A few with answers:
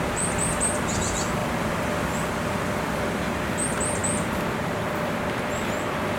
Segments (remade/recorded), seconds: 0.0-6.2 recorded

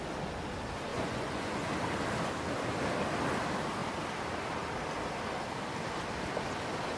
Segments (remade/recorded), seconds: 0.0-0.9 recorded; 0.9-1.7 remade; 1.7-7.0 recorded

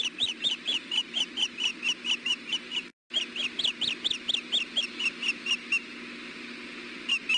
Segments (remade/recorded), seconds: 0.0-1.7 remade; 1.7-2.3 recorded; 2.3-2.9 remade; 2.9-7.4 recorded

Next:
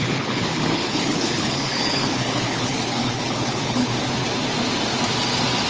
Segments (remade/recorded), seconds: 0.0-3.9 remade; 3.9-5.7 recorded

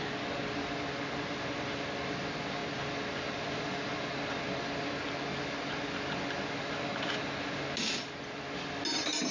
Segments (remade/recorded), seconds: 0.0-9.3 recorded